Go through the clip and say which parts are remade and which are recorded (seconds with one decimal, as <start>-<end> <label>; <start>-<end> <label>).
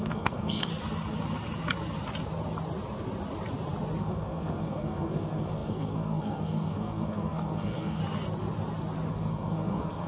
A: 0.0-0.7 remade; 0.7-4.0 recorded; 4.0-8.0 remade; 8.0-9.1 recorded; 9.1-10.1 remade